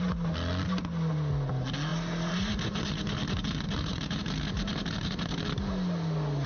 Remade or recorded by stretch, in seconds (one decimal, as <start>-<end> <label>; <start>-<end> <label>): 0.0-1.9 recorded; 1.9-5.4 remade; 5.4-6.5 recorded